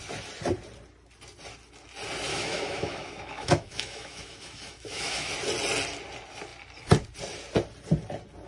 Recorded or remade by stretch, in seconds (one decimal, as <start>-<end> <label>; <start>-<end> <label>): 0.0-2.3 recorded; 2.3-5.3 remade; 5.3-8.5 recorded